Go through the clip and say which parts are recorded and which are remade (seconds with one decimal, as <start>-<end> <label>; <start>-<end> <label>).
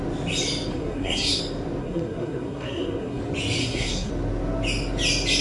0.0-0.7 recorded; 0.7-1.4 remade; 1.4-1.8 recorded; 1.8-3.2 remade; 3.2-3.6 recorded; 3.6-4.1 remade; 4.1-5.4 recorded